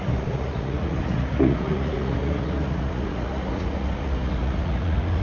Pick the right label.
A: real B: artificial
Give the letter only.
B